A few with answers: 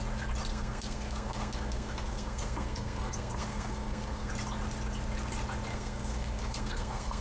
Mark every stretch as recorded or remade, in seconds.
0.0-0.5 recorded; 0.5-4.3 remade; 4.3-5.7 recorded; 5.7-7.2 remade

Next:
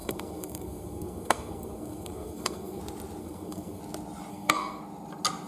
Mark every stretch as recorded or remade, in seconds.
0.0-2.8 remade; 2.8-3.2 recorded; 3.2-3.8 remade; 3.8-4.3 recorded; 4.3-4.8 remade; 4.8-5.5 recorded